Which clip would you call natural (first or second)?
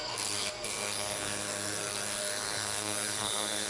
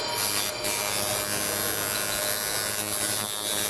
second